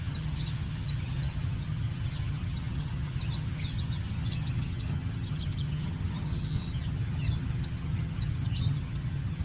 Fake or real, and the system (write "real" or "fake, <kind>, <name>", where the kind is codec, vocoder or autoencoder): fake, vocoder, HiFi-GAN